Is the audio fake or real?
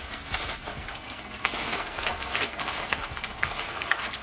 fake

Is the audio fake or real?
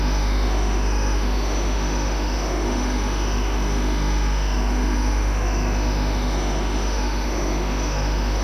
fake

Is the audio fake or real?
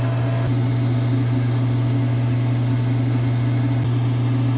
real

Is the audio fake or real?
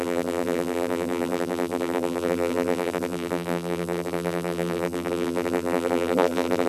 fake